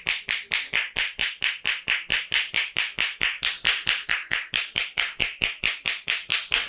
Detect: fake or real real